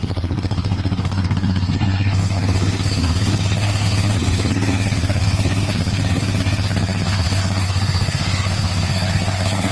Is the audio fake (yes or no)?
yes